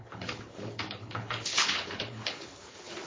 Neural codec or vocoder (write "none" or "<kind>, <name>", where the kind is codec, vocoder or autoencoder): codec, HILCodec